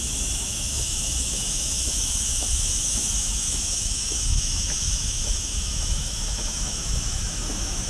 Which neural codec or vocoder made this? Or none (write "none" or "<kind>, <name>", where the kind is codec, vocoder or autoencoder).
autoencoder, DAC-VAE